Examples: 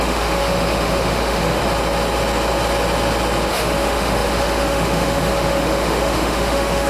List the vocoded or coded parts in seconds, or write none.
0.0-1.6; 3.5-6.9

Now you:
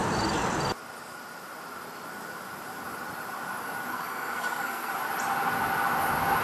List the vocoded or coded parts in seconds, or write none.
3.9-4.9

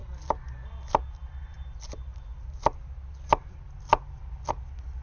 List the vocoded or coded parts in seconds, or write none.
none

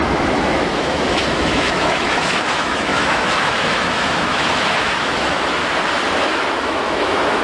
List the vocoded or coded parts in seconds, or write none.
0.0-5.6; 6.2-7.4

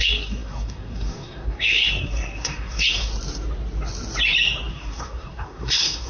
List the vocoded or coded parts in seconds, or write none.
0.0-3.1; 4.7-6.1

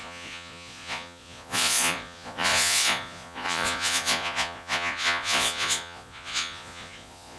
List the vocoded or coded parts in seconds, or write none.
0.0-7.4

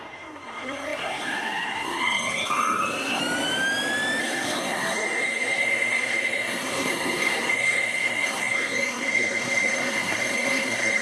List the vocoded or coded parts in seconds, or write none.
0.0-3.2; 4.2-11.0

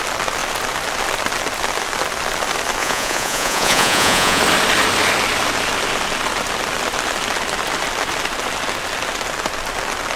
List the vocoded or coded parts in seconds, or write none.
2.8-4.4